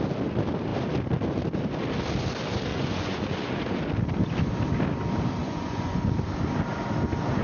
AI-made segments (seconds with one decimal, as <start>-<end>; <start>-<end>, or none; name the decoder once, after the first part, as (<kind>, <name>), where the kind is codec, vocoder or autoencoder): 2.7-3.7 (vocoder, Vocos); 5.4-6.1